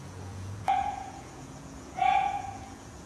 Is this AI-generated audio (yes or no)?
yes